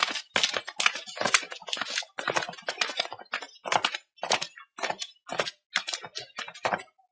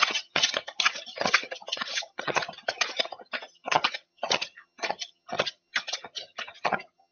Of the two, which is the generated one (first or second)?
second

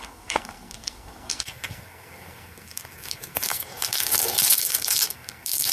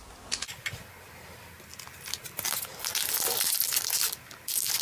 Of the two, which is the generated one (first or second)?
first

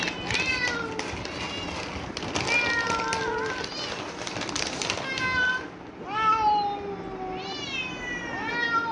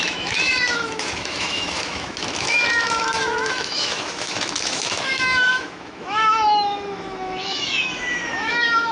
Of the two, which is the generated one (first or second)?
second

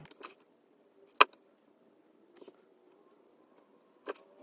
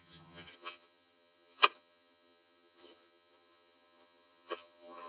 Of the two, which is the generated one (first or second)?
second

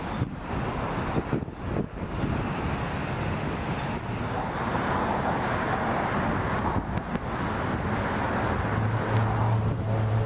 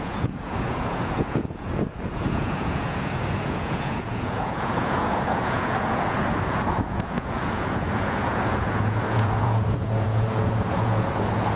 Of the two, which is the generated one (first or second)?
second